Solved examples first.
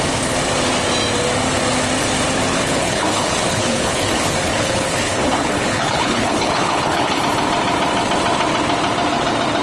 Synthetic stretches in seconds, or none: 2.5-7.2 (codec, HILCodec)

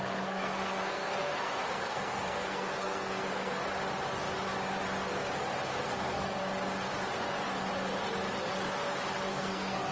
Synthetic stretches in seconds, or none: 0.0-3.6 (codec, SNAC); 5.8-6.4; 9.3-9.9

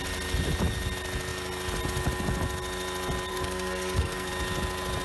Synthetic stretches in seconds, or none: 3.3-4.3 (codec, SNAC)

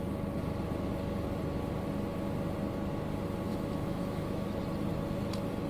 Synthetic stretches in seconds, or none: 3.5-4.6 (autoencoder, DAC-VAE)

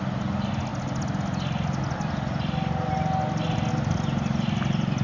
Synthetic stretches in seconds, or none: none